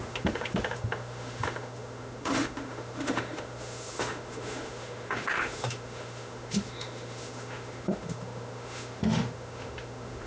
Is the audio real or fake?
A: fake